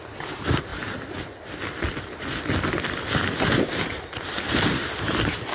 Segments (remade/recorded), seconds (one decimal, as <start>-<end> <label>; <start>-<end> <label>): 0.0-5.5 recorded